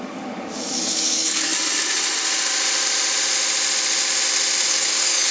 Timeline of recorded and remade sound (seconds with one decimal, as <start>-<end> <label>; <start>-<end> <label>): 0.0-1.5 remade; 1.5-4.7 recorded; 4.7-5.3 remade